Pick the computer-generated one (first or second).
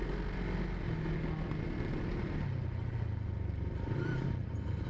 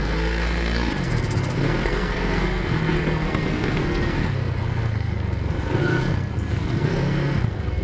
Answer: second